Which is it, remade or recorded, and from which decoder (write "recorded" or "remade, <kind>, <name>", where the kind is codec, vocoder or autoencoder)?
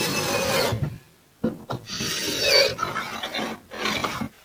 recorded